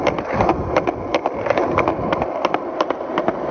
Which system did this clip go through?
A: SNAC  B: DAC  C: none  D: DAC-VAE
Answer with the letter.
C